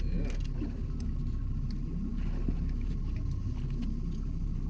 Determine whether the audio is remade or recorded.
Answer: recorded